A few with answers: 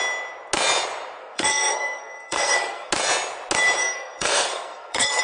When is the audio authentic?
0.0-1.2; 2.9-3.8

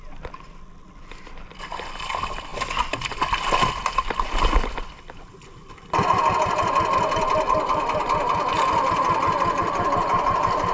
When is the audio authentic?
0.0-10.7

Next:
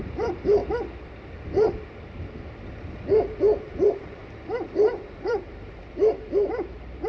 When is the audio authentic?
0.6-3.6; 4.2-4.9